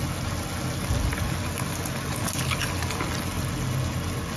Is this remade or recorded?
recorded